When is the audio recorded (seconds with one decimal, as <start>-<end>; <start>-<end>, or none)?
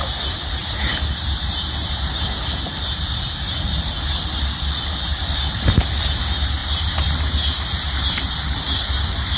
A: 0.0-0.6; 5.2-6.6; 8.3-9.4